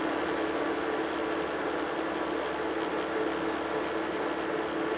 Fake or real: real